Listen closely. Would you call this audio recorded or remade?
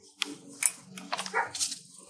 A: recorded